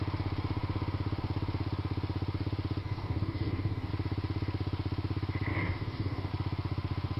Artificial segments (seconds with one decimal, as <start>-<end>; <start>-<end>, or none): 2.8-3.9; 5.5-6.3